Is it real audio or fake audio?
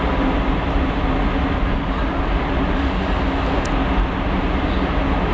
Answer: real